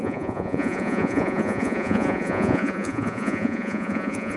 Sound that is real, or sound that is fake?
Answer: fake